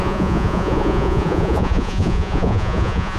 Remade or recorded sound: remade